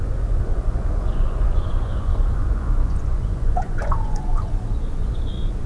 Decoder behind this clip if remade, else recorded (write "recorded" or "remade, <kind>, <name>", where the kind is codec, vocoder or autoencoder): remade, vocoder, Vocos